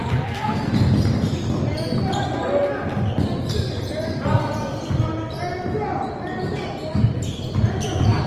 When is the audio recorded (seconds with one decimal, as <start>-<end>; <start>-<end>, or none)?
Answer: 0.7-8.3